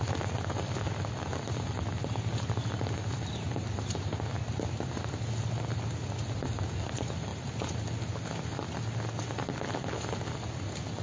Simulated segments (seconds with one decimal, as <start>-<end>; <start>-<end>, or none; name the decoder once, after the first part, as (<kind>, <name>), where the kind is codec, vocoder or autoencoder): none